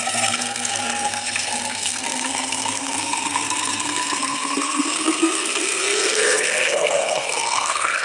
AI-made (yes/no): yes